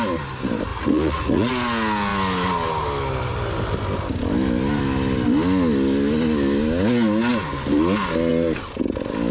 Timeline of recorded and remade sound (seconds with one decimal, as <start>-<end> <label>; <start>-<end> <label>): 0.0-0.7 recorded; 0.7-1.5 remade; 1.5-9.3 recorded